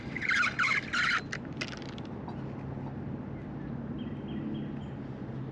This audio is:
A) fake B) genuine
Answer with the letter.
B